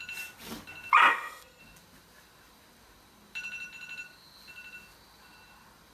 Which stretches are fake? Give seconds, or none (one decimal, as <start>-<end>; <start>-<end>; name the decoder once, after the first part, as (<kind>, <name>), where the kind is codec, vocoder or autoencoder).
1.1-1.6 (codec, SNAC)